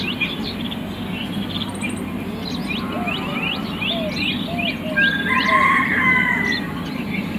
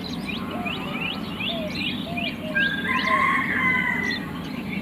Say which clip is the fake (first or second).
second